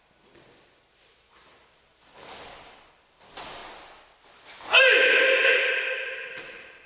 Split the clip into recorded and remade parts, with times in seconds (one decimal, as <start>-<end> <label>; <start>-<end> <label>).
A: 0.0-3.6 remade; 3.6-5.6 recorded; 5.6-6.9 remade